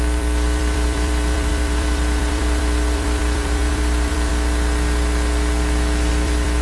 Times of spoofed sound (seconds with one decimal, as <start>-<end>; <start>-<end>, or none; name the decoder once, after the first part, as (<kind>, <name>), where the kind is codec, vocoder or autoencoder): 0.0-4.3 (vocoder, BigVGAN v2); 6.1-6.6